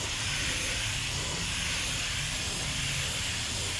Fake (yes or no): no